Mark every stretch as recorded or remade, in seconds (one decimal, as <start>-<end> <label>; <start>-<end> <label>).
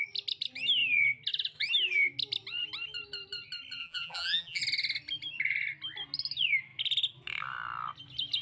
0.0-3.8 recorded; 3.8-4.6 remade; 4.6-8.4 recorded